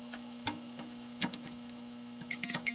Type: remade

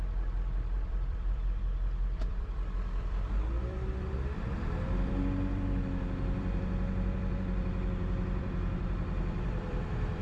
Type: remade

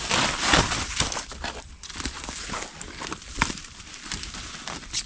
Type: remade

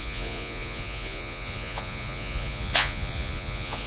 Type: remade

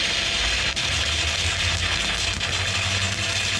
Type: recorded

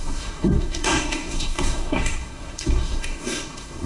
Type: remade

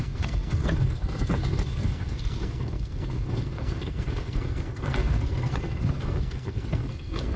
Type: remade